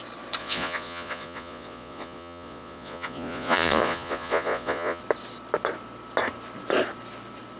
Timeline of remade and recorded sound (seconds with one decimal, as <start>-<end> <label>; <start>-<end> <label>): 0.0-0.4 recorded; 0.4-5.0 remade; 5.0-7.6 recorded